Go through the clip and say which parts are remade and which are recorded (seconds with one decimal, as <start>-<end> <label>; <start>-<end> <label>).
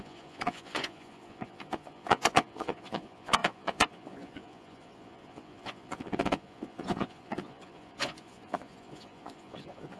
0.0-10.0 remade